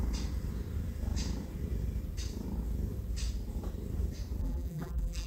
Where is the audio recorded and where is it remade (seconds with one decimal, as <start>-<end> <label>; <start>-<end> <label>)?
0.0-4.4 recorded; 4.4-5.3 remade

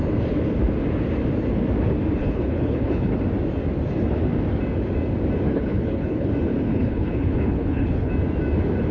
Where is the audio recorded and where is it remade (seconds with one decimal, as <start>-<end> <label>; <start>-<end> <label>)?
0.0-2.2 recorded; 2.2-3.1 remade; 3.1-5.5 recorded; 5.5-6.3 remade; 6.3-6.7 recorded; 6.7-8.1 remade; 8.1-8.9 recorded

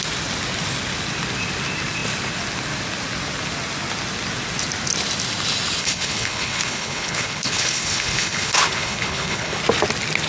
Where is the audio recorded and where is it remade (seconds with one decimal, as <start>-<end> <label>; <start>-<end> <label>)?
0.0-5.8 recorded; 5.8-9.6 remade; 9.6-10.3 recorded

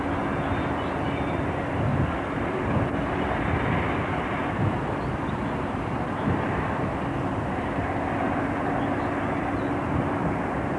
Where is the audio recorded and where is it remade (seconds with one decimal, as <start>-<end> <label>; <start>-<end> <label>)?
0.0-1.9 recorded; 1.9-2.6 remade; 2.6-4.4 recorded; 4.4-8.0 remade; 8.0-10.8 recorded

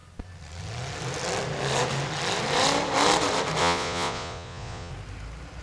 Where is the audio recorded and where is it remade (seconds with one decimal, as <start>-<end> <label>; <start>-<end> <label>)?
0.0-3.6 recorded; 3.6-4.9 remade; 4.9-5.6 recorded

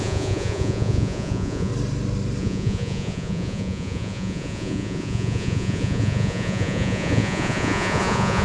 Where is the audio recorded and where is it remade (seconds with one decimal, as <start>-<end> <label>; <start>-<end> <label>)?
0.0-1.7 remade; 1.7-2.4 recorded; 2.4-8.4 remade

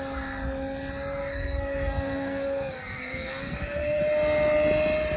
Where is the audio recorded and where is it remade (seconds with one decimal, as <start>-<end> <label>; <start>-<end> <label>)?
0.0-1.2 recorded; 1.2-4.0 remade; 4.0-5.2 recorded